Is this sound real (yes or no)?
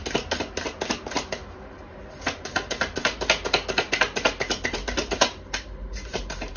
yes